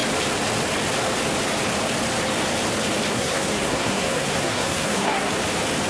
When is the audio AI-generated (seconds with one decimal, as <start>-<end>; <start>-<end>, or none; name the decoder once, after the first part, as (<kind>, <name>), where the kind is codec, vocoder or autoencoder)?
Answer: 3.1-5.3 (codec, SNAC)